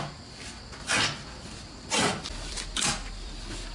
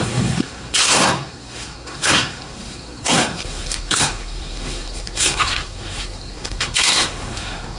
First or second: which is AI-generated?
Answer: second